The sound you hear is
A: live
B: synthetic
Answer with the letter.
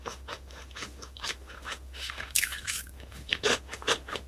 B